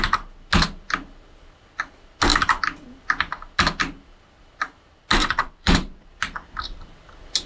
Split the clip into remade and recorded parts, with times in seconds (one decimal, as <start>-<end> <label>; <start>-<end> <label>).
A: 0.0-5.2 recorded; 5.2-6.1 remade; 6.1-7.5 recorded